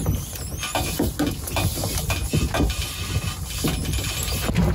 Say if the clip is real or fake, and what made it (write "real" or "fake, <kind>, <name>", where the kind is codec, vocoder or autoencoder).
real